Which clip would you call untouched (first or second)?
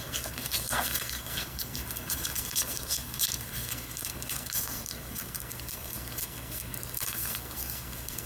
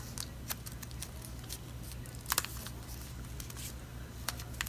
second